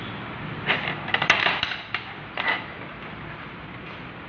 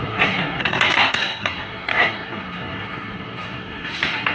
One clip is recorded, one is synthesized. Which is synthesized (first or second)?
second